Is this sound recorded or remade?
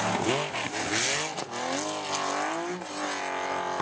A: recorded